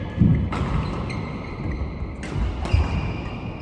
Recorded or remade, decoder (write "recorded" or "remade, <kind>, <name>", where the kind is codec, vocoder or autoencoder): recorded